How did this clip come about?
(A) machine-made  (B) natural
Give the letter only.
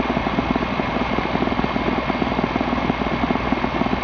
B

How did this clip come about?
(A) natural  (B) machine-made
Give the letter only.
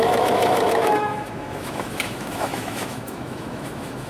B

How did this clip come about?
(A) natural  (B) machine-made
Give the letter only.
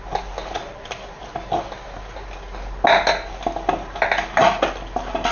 A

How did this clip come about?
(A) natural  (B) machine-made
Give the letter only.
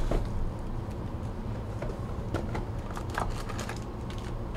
A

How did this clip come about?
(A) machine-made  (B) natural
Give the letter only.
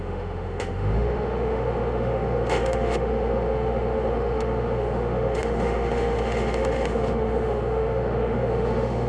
A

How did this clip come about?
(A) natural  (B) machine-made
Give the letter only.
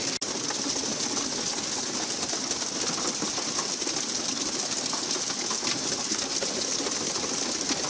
A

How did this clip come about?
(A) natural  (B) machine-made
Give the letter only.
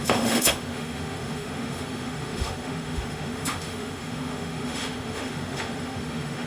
B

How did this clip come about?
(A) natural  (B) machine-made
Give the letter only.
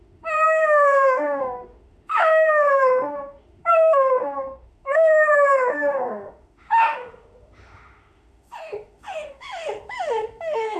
B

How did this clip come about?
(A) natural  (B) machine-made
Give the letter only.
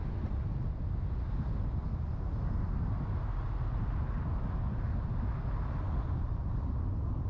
A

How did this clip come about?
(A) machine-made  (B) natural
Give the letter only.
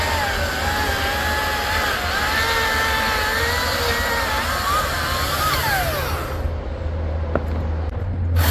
B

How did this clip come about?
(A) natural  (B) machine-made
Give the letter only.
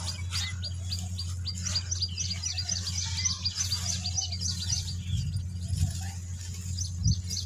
A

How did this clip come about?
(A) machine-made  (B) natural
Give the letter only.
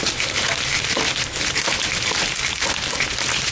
B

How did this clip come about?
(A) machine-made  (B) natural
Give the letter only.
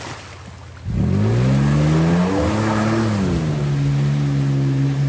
B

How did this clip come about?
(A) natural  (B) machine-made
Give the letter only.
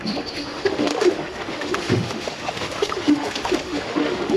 B